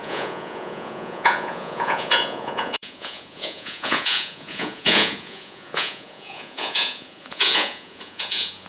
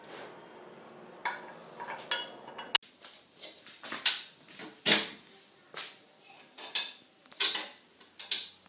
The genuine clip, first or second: second